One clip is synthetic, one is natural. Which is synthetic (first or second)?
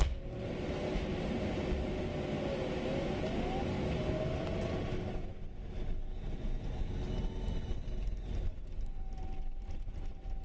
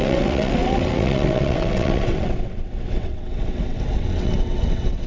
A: second